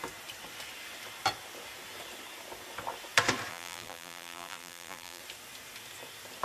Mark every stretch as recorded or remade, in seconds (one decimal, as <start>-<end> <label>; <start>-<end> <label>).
0.0-3.5 recorded; 3.5-5.2 remade; 5.2-6.4 recorded